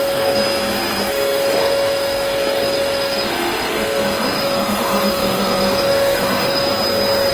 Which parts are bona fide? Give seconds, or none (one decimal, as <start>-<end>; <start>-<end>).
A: 0.4-1.1; 6.7-7.3